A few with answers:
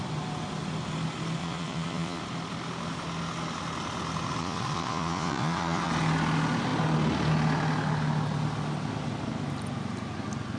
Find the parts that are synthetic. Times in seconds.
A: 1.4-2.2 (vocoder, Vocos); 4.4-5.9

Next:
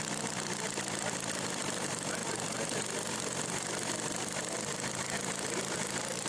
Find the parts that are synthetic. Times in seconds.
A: none